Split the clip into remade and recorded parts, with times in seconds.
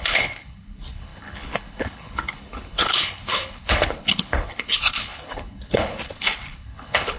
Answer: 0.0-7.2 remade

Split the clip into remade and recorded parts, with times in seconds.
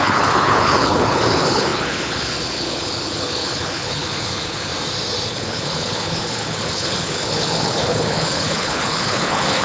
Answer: 0.0-4.7 remade; 4.7-5.3 recorded; 5.3-9.6 remade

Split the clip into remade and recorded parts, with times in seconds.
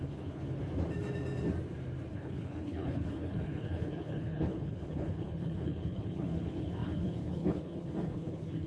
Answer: 0.0-0.6 remade; 0.6-2.1 recorded; 2.1-8.7 remade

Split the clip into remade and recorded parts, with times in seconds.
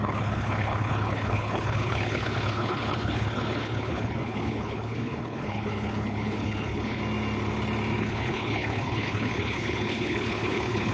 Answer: 0.0-7.0 remade; 7.0-8.0 recorded; 8.0-10.9 remade